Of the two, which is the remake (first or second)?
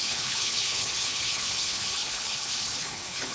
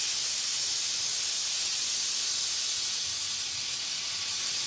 first